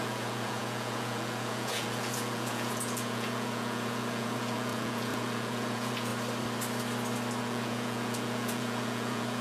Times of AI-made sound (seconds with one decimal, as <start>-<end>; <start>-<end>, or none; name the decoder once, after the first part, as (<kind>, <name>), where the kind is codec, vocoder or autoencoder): 0.0-6.1 (vocoder, Vocos); 7.4-9.4